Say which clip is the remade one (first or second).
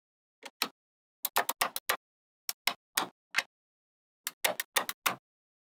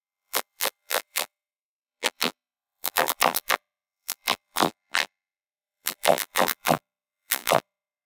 second